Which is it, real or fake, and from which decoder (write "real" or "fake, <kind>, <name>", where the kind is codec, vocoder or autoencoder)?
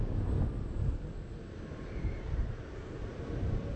fake, vocoder, BigVGAN v2